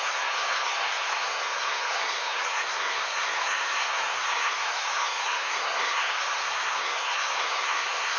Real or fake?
fake